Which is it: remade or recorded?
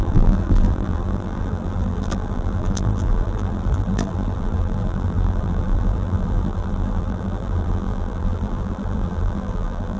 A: remade